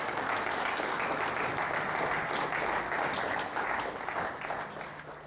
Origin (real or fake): real